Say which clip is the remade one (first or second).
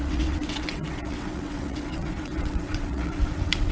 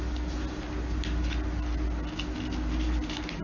first